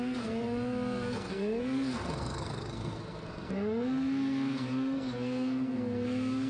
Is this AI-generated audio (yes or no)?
yes